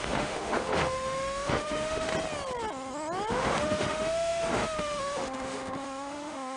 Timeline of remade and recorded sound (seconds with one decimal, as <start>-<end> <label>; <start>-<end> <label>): 0.0-2.1 remade; 2.1-3.3 recorded; 3.3-6.6 remade